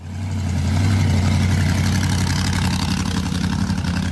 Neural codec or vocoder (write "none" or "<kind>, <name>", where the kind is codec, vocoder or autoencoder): none